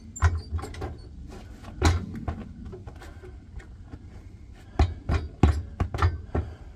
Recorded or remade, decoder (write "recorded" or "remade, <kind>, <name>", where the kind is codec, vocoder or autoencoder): recorded